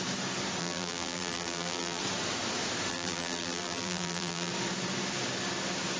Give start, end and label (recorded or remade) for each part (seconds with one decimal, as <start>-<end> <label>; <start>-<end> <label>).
0.0-0.6 recorded; 0.6-2.0 remade; 2.0-2.9 recorded; 2.9-4.5 remade; 4.5-6.0 recorded